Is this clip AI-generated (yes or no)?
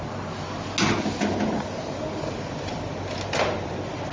no